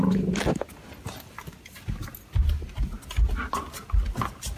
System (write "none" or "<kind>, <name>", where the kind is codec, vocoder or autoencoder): none